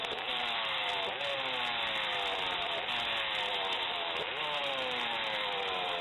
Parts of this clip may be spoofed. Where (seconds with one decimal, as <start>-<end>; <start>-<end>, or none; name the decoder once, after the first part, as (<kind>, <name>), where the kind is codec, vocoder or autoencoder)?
none